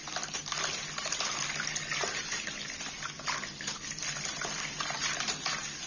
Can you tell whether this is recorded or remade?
recorded